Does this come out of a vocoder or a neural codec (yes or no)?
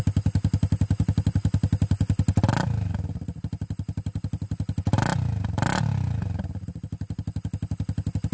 no